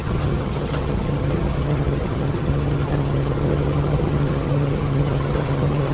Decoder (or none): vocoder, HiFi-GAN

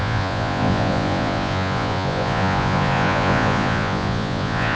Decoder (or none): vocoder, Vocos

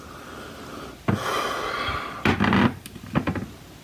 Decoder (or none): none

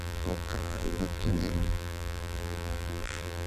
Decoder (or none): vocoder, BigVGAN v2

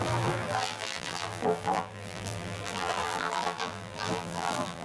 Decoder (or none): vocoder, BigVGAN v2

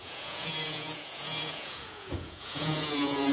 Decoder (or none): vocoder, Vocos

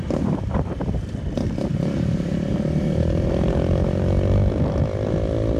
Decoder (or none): vocoder, BigVGAN v2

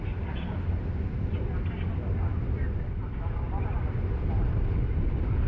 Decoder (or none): none